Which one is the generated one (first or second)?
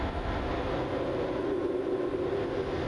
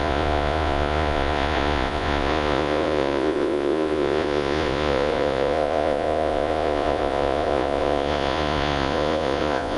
second